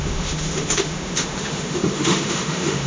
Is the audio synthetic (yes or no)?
yes